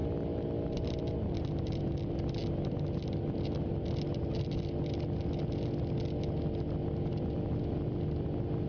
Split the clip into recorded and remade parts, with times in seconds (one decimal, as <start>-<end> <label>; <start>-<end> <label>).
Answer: 0.0-1.8 remade; 1.8-8.7 recorded